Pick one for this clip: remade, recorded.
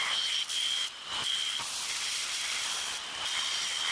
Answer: recorded